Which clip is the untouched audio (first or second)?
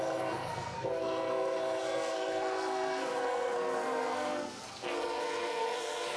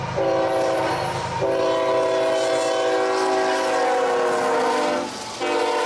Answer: second